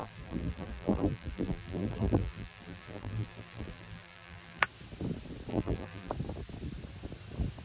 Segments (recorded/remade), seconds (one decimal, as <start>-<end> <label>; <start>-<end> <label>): 0.0-4.6 remade; 4.6-5.5 recorded; 5.5-6.1 remade; 6.1-7.6 recorded